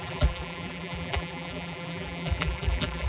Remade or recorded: remade